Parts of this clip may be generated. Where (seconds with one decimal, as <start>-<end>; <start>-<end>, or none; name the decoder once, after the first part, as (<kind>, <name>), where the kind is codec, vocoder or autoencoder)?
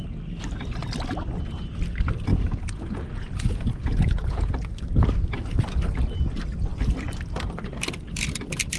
2.3-4.5 (vocoder, Vocos)